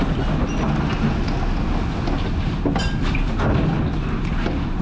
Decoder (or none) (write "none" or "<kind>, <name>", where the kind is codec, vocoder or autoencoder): none